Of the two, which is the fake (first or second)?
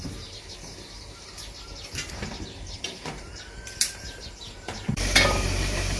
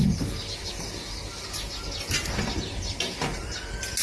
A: first